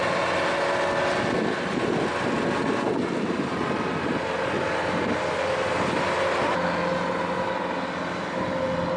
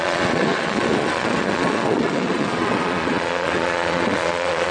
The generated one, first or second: second